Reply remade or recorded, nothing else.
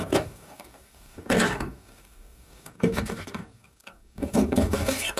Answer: remade